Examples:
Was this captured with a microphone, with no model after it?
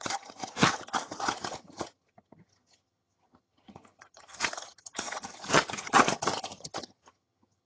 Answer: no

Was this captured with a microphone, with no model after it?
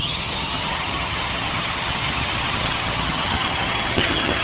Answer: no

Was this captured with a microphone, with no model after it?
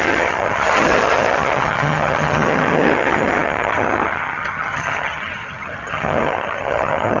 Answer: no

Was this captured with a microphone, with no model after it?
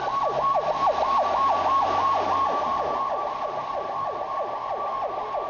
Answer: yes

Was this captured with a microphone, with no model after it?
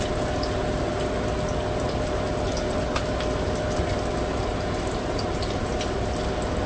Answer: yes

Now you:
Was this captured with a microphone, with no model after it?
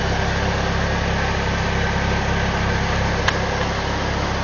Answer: yes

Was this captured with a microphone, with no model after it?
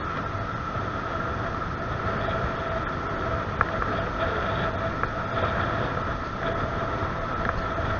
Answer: yes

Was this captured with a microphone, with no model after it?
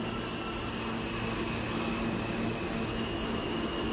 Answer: yes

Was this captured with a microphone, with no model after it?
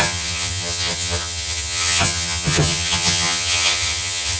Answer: no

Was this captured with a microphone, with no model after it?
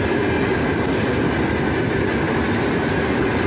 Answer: yes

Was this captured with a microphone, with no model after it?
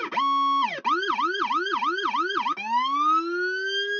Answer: yes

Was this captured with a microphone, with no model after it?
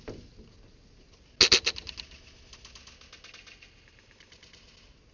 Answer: yes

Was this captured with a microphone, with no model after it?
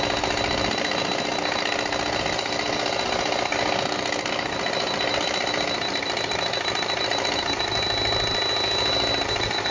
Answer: yes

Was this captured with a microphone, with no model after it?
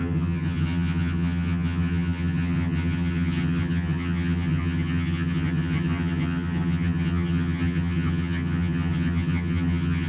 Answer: no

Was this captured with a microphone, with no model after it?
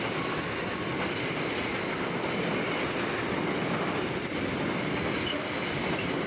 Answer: yes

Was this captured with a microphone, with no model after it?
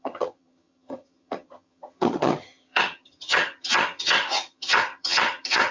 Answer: no